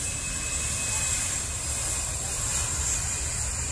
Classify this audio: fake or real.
real